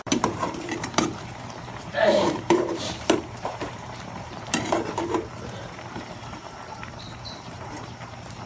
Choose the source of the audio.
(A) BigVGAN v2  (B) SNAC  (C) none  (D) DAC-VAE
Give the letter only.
A